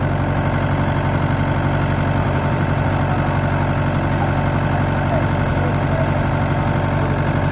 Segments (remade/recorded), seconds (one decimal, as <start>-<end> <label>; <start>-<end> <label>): 0.0-2.2 recorded; 2.2-2.9 remade; 2.9-5.5 recorded; 5.5-6.3 remade; 6.3-7.5 recorded